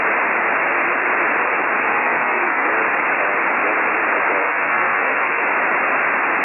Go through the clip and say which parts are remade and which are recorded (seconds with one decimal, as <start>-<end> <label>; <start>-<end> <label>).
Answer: 0.0-1.9 recorded; 1.9-2.7 remade; 2.7-4.4 recorded; 4.4-5.4 remade; 5.4-6.4 recorded